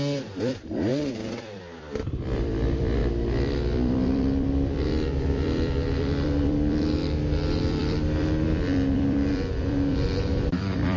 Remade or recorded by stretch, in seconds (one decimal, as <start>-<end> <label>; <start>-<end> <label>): 0.0-3.0 remade; 3.0-3.5 recorded; 3.5-11.0 remade

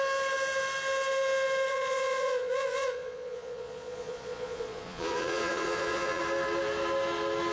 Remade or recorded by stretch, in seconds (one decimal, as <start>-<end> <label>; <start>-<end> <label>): 0.0-1.7 recorded; 1.7-6.2 remade; 6.2-7.5 recorded

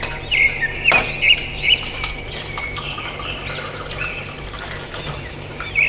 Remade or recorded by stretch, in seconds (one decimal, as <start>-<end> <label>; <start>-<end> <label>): 0.0-1.5 recorded; 1.5-5.0 remade; 5.0-5.9 recorded

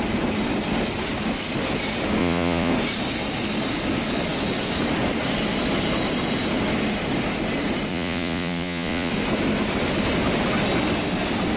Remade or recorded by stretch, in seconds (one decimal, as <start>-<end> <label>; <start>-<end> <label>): 0.0-2.2 recorded; 2.2-2.7 remade; 2.7-7.9 recorded; 7.9-9.1 remade; 9.1-11.6 recorded